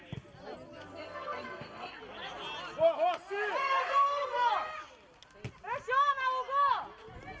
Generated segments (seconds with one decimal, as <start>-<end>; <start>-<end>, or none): 0.9-2.0; 3.6-4.5